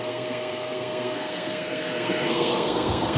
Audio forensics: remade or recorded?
remade